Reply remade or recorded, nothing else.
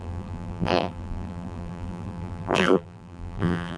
remade